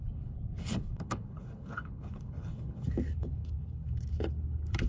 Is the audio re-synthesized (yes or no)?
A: yes